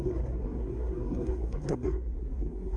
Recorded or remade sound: remade